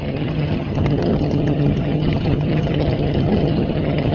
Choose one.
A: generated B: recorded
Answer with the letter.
A